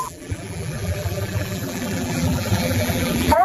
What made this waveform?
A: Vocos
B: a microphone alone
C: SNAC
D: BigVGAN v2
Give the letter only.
D